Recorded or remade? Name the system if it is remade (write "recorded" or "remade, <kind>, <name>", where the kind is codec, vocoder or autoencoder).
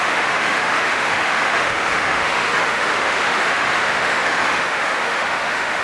remade, autoencoder, DAC-VAE